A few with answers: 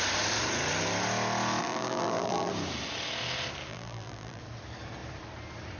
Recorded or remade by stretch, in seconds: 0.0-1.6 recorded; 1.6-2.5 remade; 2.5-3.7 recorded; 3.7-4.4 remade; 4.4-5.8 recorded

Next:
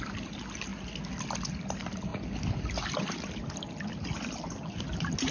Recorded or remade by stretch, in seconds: 0.0-5.3 recorded